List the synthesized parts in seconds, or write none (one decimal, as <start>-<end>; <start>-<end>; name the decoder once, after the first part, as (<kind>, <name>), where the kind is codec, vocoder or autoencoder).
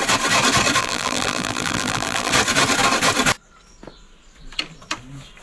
0.8-2.3 (vocoder, BigVGAN v2)